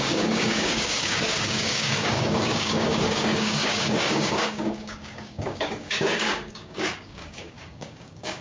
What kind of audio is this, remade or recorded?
remade